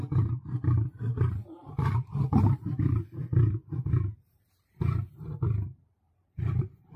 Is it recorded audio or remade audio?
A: remade